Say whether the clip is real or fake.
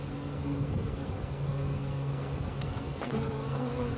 fake